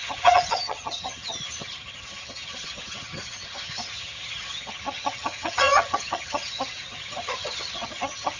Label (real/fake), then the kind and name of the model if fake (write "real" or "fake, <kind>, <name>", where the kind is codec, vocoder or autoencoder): fake, vocoder, HiFi-GAN